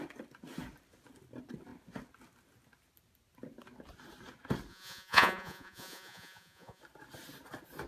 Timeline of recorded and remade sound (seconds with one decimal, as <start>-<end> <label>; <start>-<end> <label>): 0.0-4.7 recorded; 4.7-6.8 remade; 6.8-7.9 recorded